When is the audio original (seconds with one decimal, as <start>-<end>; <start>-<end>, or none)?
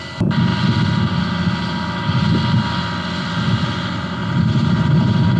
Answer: 0.0-4.2; 5.0-5.4